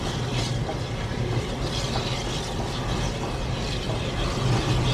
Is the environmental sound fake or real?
real